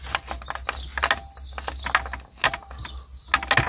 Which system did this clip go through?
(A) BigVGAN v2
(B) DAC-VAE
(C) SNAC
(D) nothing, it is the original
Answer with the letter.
D